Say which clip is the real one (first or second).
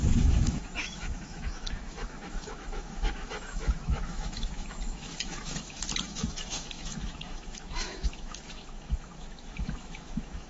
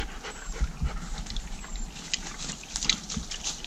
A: second